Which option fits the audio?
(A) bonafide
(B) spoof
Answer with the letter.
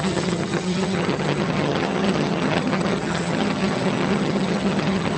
B